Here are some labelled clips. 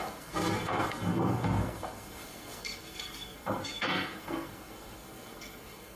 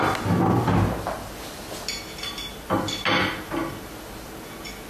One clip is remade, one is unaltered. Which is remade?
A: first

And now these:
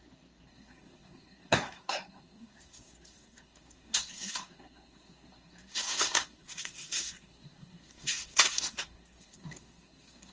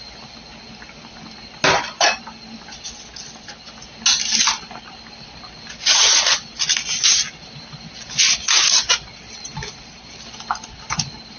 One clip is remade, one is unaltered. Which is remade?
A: first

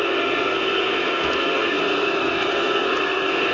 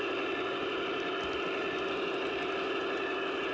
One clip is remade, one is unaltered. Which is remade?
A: first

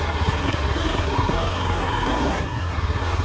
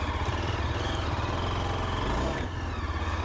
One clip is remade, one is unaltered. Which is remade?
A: first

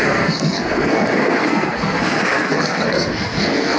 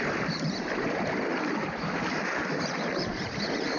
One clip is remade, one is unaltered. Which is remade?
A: first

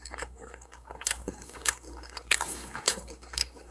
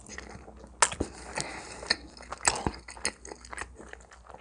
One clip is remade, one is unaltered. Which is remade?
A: first